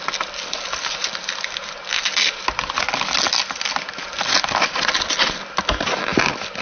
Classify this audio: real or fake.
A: real